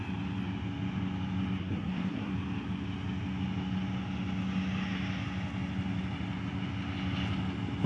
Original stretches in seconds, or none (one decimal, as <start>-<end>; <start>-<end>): 0.0-1.6; 2.3-7.9